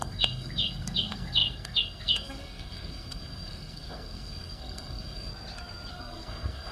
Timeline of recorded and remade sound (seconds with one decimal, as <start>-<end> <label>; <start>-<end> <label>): 0.0-5.3 remade; 5.3-5.9 recorded; 5.9-6.7 remade

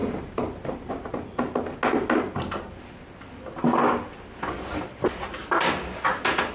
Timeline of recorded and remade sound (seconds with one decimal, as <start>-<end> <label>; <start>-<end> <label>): 0.0-6.5 recorded

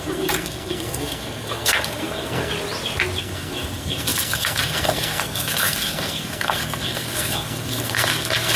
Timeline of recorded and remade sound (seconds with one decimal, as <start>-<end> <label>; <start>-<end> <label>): 0.0-2.5 remade; 2.5-3.2 recorded; 3.2-8.6 remade

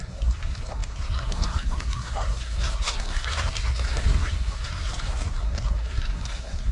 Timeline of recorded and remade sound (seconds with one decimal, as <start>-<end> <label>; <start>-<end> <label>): 0.0-6.7 remade

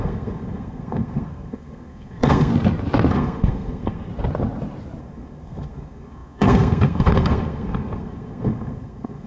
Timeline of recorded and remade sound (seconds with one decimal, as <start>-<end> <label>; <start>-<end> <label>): 0.0-2.5 remade; 2.5-3.1 recorded; 3.1-4.1 remade; 4.1-5.0 recorded; 5.0-9.3 remade